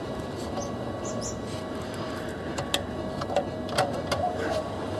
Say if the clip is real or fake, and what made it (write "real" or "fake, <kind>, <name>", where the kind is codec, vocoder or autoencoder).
real